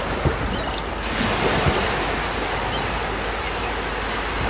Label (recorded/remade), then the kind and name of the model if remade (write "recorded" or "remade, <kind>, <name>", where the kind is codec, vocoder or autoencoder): recorded